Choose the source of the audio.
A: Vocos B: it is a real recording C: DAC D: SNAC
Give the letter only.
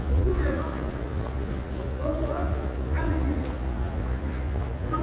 A